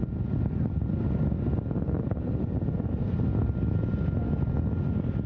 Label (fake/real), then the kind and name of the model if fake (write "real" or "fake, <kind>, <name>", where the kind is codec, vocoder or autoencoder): real